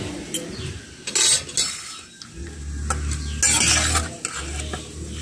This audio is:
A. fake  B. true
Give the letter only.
B